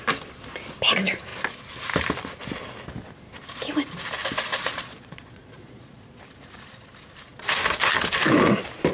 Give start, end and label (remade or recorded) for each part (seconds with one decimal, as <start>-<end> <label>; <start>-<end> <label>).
0.0-4.5 recorded; 4.5-6.2 remade; 6.2-8.9 recorded